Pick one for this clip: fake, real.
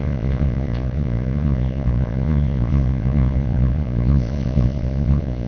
fake